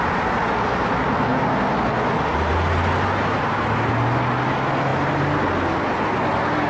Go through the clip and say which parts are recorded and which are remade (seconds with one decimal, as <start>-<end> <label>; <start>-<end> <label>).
0.0-6.7 recorded